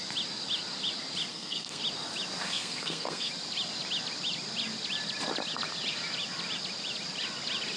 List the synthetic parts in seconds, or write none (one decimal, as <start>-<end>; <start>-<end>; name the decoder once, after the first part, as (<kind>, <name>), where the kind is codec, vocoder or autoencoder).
1.3-1.8 (codec, SNAC); 2.4-3.3